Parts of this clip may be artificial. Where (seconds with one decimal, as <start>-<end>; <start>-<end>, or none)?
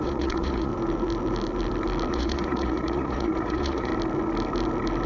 0.0-0.7; 2.1-3.9